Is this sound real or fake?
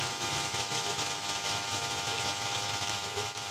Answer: fake